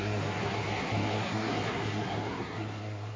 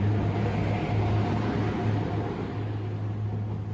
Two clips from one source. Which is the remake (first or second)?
first